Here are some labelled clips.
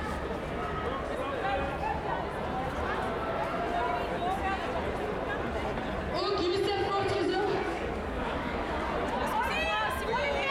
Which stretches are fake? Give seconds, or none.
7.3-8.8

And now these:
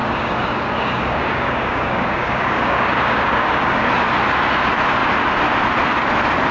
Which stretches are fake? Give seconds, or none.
0.0-3.9

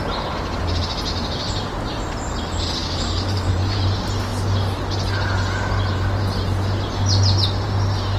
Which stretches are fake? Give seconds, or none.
2.8-3.5